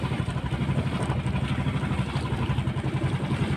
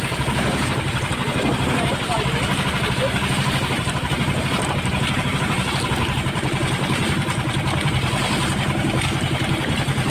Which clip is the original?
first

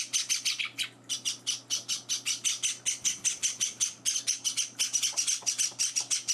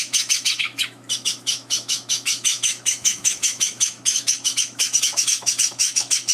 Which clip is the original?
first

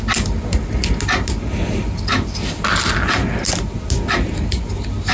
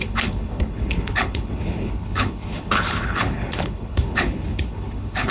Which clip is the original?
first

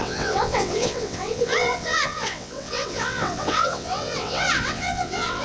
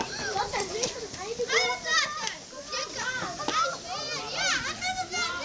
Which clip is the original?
second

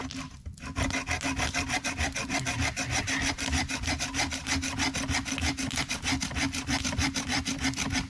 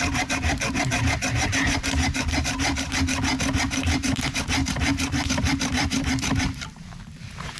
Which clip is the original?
first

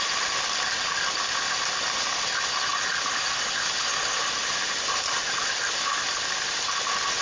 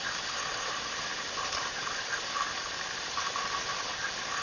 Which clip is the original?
first